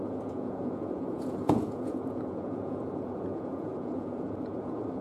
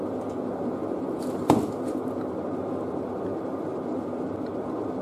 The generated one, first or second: first